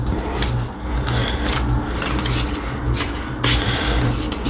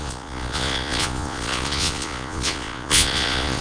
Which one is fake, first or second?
second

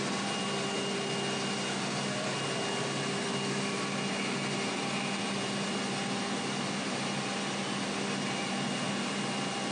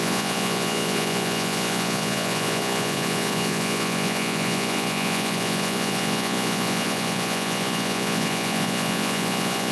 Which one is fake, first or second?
second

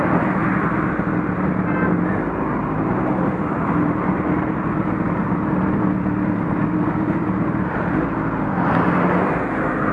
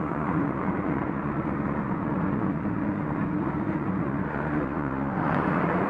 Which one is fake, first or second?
second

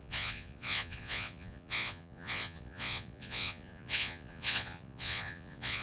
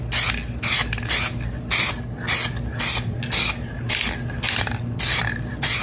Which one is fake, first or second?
first